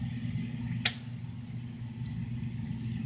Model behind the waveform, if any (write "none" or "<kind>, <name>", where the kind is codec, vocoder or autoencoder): none